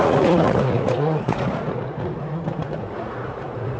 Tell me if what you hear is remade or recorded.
remade